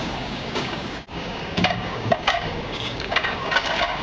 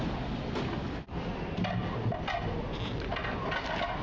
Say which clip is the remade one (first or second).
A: first